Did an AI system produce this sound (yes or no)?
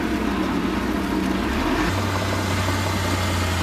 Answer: no